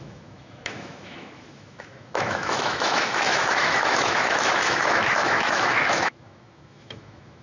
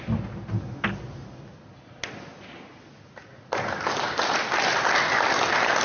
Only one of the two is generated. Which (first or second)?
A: first